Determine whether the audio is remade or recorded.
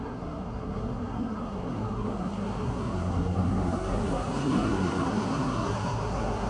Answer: remade